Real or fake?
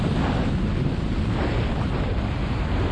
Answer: real